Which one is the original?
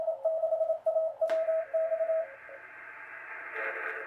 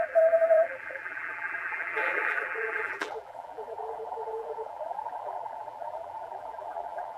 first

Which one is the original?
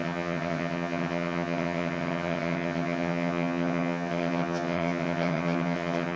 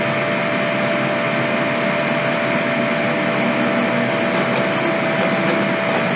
second